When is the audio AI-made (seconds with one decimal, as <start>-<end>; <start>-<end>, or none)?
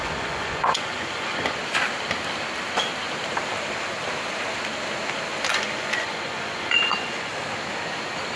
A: 0.0-1.6; 5.5-7.3